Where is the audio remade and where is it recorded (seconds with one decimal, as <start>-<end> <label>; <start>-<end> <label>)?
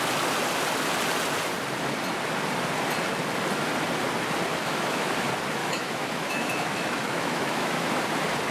0.0-4.5 recorded; 4.5-5.1 remade; 5.1-5.6 recorded; 5.6-7.9 remade; 7.9-8.5 recorded